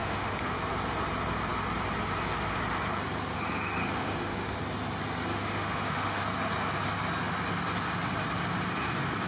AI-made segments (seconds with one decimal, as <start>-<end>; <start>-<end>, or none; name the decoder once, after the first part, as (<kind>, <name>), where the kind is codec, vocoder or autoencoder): 0.0-0.5 (autoencoder, DAC-VAE); 3.8-4.6; 5.3-6.2